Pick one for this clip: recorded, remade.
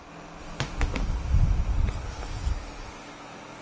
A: recorded